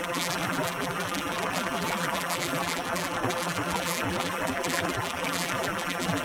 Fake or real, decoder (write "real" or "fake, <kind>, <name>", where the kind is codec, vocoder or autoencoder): fake, vocoder, BigVGAN v2